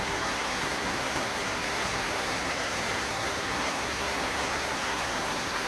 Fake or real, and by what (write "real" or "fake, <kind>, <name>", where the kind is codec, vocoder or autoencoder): fake, codec, SNAC